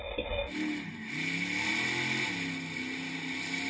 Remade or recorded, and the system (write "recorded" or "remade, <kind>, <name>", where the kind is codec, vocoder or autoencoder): recorded